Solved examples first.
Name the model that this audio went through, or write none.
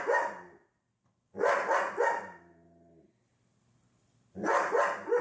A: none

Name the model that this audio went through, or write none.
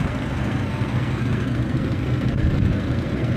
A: codec, SNAC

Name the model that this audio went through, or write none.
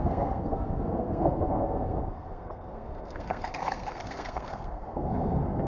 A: codec, SNAC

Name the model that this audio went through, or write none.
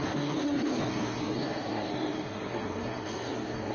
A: codec, SNAC